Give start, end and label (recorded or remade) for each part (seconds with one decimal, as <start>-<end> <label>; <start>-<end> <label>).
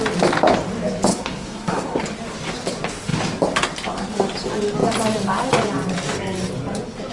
0.0-1.1 recorded; 1.1-2.0 remade; 2.0-7.1 recorded